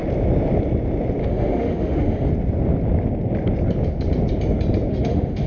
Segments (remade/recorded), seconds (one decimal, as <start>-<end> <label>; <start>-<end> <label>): 0.0-1.2 recorded; 1.2-2.3 remade; 2.3-4.9 recorded; 4.9-5.5 remade